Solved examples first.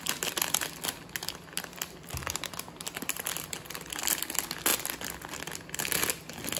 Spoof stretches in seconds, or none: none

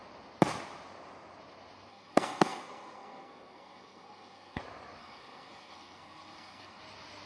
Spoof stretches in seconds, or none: 1.9-4.6 (codec, SNAC); 5.0-6.8

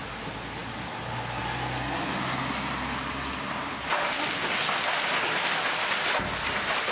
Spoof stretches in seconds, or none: none

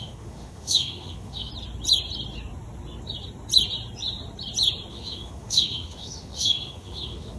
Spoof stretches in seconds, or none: 0.0-1.5 (autoencoder, DAC-VAE); 4.9-7.4

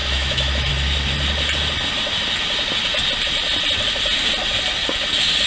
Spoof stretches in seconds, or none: 0.0-0.7 (autoencoder, DAC-VAE)

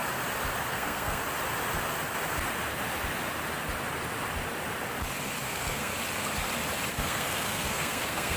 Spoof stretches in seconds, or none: 0.7-1.2 (codec, SNAC); 5.4-5.9; 6.9-8.4

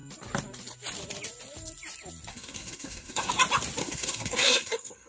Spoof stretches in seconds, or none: 2.3-3.3 (codec, SNAC); 3.8-5.1